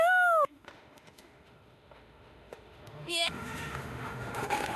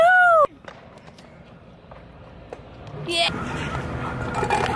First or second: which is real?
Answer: second